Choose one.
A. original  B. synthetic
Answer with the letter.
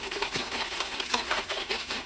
B